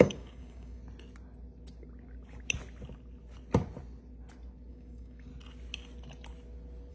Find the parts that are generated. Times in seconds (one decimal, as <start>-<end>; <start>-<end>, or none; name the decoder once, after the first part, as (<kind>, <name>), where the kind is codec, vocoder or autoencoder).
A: 0.0-0.8 (codec, DAC); 4.7-5.3